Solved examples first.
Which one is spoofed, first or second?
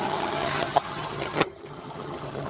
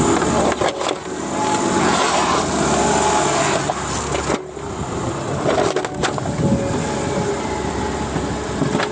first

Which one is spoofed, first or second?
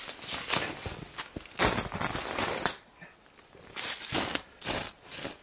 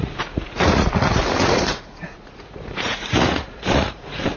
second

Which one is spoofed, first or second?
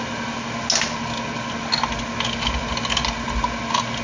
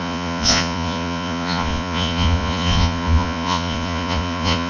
second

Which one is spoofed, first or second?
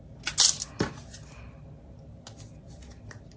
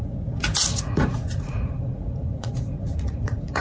second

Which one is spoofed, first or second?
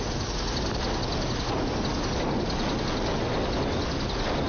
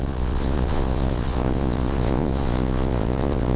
second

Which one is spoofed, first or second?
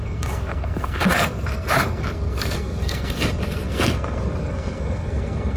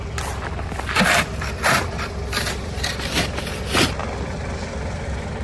first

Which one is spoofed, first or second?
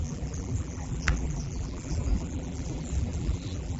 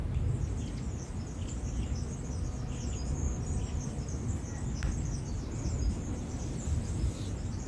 first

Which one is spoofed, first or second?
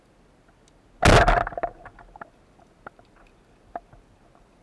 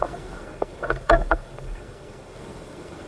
second